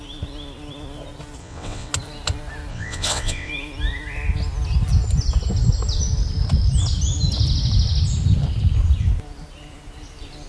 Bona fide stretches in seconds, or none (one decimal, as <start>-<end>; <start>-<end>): 0.0-1.4; 1.9-2.7; 3.5-10.5